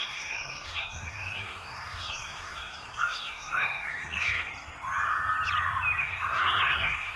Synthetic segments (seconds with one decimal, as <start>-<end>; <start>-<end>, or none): 0.0-4.5; 6.0-7.2